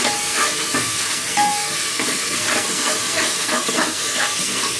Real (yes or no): no